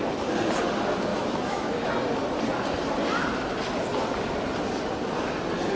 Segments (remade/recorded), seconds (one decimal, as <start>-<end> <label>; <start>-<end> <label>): 0.0-1.1 recorded; 1.1-1.9 remade; 1.9-5.8 recorded